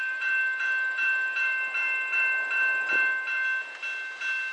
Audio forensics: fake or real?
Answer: real